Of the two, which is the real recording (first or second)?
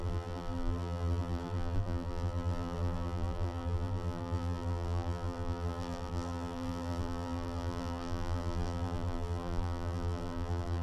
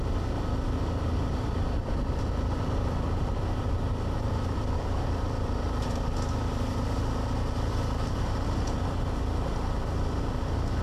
second